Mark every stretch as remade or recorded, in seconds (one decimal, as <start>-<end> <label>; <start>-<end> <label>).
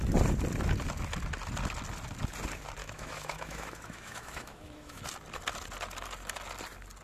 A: 0.0-2.8 recorded; 2.8-5.0 remade; 5.0-7.0 recorded